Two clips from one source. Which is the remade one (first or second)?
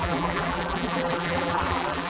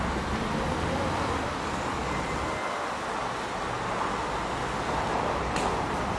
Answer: first